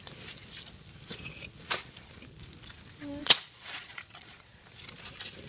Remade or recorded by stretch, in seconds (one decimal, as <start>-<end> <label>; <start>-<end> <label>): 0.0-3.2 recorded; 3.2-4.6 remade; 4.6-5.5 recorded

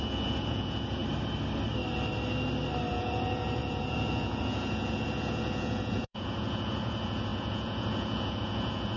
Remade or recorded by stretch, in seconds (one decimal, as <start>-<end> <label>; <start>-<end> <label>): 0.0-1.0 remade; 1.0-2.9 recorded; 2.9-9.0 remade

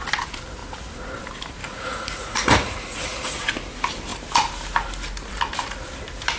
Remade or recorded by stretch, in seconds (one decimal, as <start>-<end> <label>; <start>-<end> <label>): 0.0-1.6 recorded; 1.6-3.5 remade; 3.5-6.4 recorded

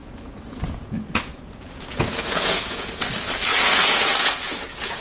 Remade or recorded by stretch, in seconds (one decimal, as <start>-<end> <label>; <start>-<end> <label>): 0.0-3.0 remade; 3.0-3.5 recorded; 3.5-5.0 remade

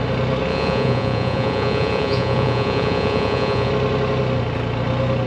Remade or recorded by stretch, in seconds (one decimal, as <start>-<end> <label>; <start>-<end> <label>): 0.0-0.5 recorded; 0.5-3.7 remade; 3.7-5.3 recorded